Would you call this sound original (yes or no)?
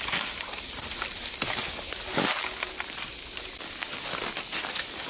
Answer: yes